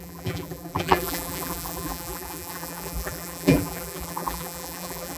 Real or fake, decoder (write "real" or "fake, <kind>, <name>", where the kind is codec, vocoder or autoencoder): fake, vocoder, BigVGAN v2